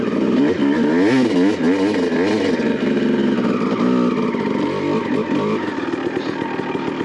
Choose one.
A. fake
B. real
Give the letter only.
B